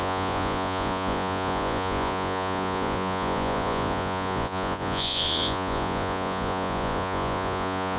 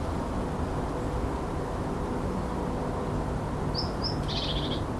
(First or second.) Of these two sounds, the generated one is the first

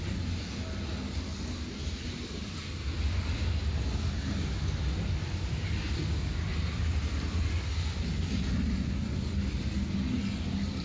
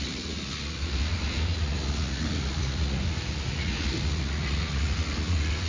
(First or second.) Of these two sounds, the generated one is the second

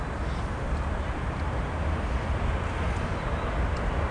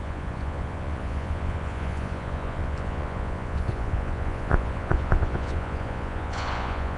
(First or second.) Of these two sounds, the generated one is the second